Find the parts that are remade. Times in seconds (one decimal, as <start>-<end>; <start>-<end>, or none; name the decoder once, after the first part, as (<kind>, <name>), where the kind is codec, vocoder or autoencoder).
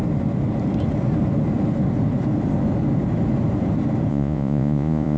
4.1-5.2 (vocoder, Vocos)